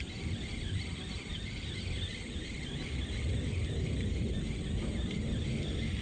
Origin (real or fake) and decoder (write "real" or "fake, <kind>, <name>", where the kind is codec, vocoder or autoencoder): real